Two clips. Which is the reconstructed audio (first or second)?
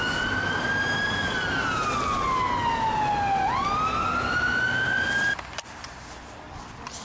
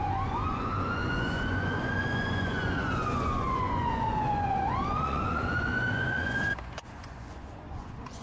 second